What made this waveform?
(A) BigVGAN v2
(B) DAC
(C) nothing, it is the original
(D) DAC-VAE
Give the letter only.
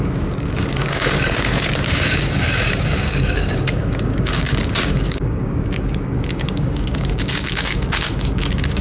B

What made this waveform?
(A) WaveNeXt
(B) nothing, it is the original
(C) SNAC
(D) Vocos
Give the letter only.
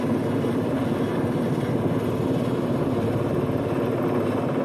B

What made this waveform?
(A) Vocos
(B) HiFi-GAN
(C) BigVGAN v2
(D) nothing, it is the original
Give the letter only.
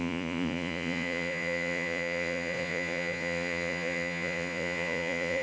A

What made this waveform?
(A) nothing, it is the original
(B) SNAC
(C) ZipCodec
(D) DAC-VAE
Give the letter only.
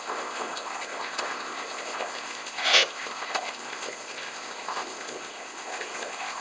C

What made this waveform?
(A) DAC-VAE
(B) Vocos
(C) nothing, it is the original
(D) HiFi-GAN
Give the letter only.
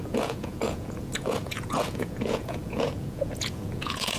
B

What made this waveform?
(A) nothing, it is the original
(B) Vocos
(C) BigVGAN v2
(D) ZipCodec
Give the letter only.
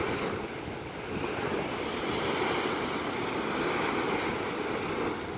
A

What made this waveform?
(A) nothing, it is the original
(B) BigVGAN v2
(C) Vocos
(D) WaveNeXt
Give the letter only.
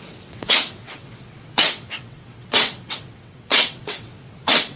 D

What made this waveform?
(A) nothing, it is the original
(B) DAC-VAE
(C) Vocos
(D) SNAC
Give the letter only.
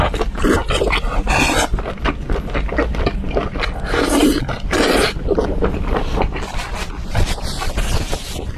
A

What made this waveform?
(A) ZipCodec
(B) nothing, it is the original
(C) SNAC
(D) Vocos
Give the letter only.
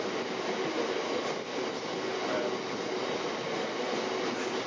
B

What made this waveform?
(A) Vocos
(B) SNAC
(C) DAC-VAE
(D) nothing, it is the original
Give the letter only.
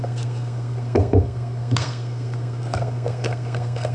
B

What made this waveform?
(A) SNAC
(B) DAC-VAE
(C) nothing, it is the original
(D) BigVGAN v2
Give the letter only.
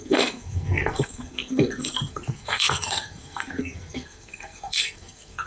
A